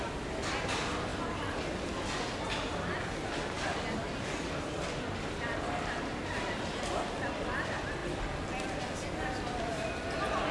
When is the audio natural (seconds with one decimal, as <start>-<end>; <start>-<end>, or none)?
0.0-10.5